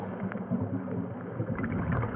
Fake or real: real